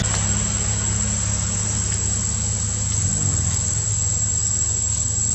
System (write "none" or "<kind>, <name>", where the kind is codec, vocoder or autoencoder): none